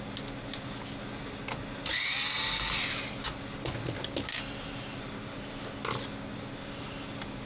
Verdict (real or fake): real